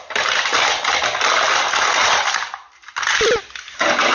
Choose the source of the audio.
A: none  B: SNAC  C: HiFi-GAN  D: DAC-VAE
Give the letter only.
A